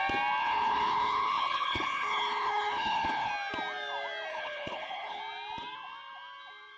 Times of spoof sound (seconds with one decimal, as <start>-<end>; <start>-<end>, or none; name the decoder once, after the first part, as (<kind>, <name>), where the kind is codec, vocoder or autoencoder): 0.4-3.3 (codec, HILCodec); 4.3-5.2